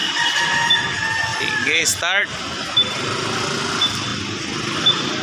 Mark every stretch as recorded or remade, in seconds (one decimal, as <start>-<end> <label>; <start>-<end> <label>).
0.0-1.3 recorded; 1.3-1.8 remade; 1.8-2.2 recorded; 2.2-2.9 remade; 2.9-5.2 recorded